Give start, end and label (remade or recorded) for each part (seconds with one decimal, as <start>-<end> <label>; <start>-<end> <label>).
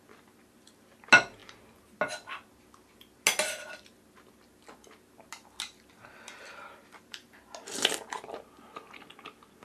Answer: 0.0-9.6 recorded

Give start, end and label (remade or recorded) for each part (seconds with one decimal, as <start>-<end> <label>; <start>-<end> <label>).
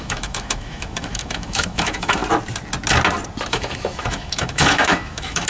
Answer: 0.0-2.2 remade; 2.2-3.5 recorded; 3.5-5.5 remade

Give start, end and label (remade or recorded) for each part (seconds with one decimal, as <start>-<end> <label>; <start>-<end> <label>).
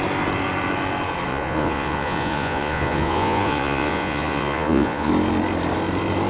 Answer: 0.0-1.3 recorded; 1.3-5.1 remade; 5.1-6.3 recorded